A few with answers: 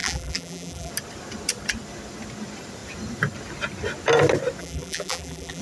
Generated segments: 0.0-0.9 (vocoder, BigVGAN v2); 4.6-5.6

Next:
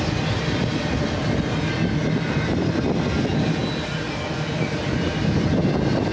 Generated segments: 0.0-1.2 (vocoder, BigVGAN v2); 3.0-3.6; 4.1-6.1

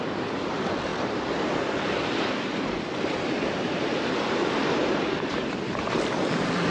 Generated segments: 0.0-6.7 (vocoder, BigVGAN v2)

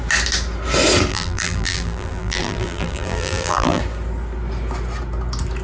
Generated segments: 1.1-3.8 (vocoder, BigVGAN v2)

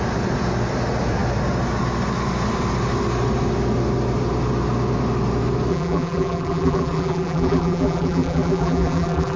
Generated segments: 5.7-9.4 (vocoder, BigVGAN v2)

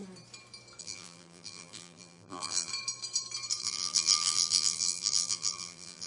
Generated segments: 0.8-2.7 (vocoder, BigVGAN v2); 3.6-6.1

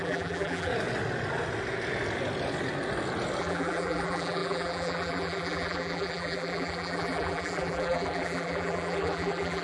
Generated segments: 0.0-0.7 (vocoder, BigVGAN v2); 3.4-9.6